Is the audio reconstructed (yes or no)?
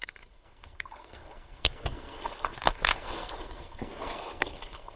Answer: yes